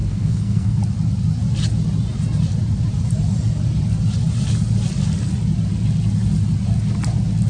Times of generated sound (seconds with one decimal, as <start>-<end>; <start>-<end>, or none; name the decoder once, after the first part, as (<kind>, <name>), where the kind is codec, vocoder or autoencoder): 0.0-0.8 (codec, SNAC)